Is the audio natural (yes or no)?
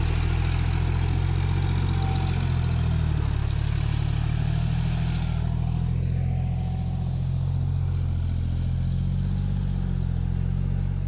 yes